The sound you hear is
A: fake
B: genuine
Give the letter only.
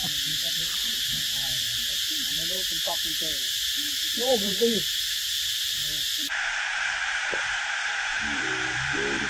A